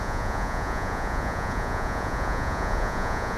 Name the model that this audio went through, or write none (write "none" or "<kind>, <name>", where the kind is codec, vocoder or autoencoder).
vocoder, Vocos